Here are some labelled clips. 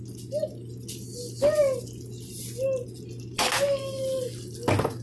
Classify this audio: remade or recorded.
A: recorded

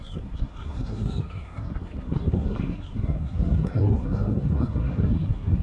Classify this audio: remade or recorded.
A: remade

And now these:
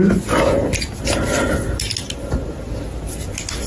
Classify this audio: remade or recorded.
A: recorded